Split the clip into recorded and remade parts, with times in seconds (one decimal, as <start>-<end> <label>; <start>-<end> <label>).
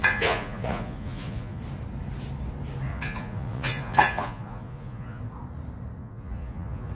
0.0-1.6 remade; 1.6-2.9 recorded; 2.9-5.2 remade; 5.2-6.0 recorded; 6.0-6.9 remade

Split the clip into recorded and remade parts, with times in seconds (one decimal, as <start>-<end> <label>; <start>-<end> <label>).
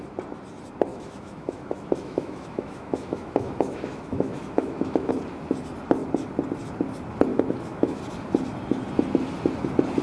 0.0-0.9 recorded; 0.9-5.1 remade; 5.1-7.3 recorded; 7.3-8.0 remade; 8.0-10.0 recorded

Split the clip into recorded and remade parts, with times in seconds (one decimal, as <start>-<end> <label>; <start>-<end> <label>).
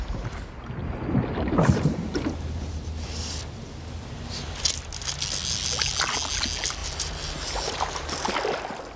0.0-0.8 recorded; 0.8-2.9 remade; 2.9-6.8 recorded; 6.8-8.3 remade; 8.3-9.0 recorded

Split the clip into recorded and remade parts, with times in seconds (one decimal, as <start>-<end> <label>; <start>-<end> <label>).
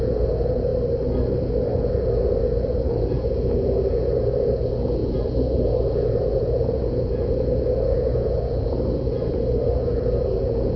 0.0-0.7 remade; 0.7-1.8 recorded; 1.8-10.8 remade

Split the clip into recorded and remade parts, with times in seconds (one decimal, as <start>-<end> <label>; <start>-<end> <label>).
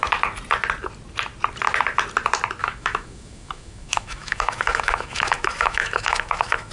0.0-2.6 recorded; 2.6-6.7 remade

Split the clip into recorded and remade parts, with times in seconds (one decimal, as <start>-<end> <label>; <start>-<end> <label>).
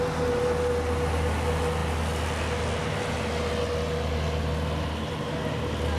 0.0-6.0 recorded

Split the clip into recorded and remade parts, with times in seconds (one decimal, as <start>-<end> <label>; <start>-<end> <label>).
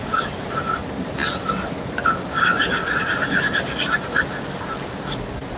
0.0-5.6 recorded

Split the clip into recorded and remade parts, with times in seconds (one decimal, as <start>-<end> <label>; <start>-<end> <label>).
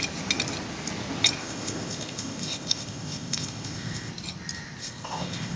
0.0-1.4 recorded; 1.4-4.1 remade; 4.1-4.8 recorded; 4.8-5.6 remade